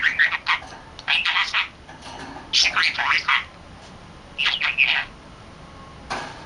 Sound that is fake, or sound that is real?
real